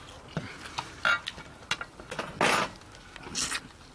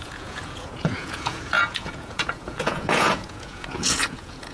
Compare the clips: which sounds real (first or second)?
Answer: first